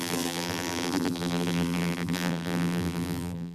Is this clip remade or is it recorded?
remade